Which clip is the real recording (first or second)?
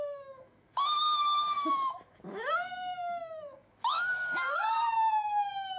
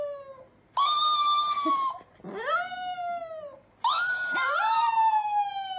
second